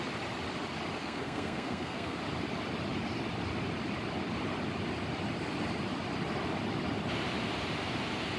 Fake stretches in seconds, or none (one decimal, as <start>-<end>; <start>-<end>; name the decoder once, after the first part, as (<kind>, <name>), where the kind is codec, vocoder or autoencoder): 1.0-2.2 (codec, SNAC)